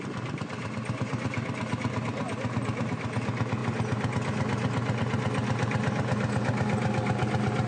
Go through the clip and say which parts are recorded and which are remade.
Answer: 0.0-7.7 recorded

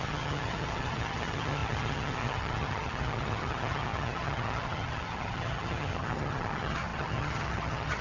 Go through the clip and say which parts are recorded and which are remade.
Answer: 0.0-8.0 remade